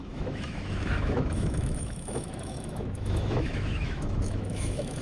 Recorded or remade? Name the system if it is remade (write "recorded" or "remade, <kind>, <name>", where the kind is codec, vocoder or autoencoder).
remade, autoencoder, DAC-VAE